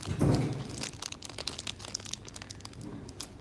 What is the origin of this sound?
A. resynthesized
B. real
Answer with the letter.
B